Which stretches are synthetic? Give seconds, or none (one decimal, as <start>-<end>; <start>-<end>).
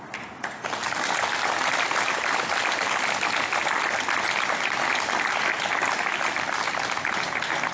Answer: none